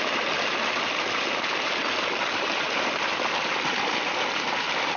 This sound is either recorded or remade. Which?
recorded